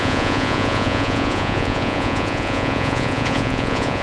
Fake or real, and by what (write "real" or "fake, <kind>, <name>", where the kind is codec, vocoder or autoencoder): fake, vocoder, Vocos